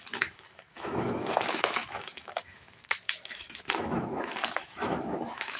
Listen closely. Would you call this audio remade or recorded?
remade